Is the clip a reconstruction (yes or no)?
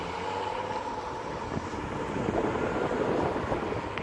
no